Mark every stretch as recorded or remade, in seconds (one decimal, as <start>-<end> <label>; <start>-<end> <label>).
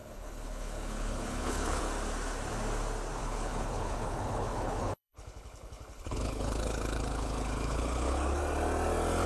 0.0-1.8 remade; 1.8-3.2 recorded; 3.2-8.4 remade; 8.4-9.3 recorded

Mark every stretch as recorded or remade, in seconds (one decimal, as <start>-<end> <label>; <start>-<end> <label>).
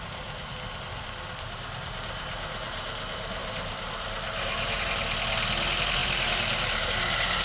0.0-6.0 recorded; 6.0-7.0 remade; 7.0-7.4 recorded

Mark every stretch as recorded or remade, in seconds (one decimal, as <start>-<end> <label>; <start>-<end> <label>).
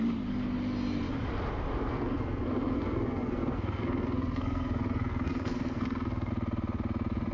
0.0-1.9 recorded; 1.9-6.3 remade; 6.3-7.3 recorded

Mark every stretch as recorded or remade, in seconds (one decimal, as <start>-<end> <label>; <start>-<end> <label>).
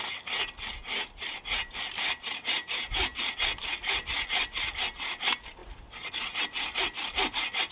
0.0-7.7 recorded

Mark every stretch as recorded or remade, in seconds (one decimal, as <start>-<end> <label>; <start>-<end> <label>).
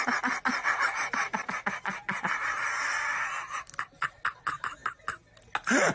0.0-0.5 recorded; 0.5-2.8 remade; 2.8-5.9 recorded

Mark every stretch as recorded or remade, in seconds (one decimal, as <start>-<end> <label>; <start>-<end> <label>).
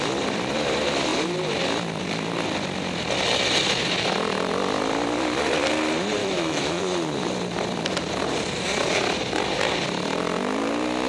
0.0-6.2 recorded; 6.2-6.8 remade; 6.8-11.1 recorded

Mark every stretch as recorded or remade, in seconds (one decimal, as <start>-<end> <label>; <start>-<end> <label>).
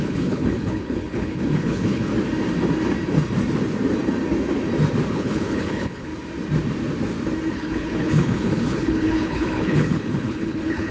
0.0-2.1 remade; 2.1-5.1 recorded; 5.1-6.1 remade; 6.1-7.5 recorded; 7.5-10.9 remade